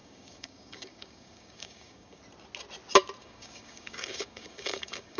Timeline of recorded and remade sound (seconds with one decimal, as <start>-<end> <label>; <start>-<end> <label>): 0.0-2.2 remade; 2.2-3.2 recorded; 3.2-5.2 remade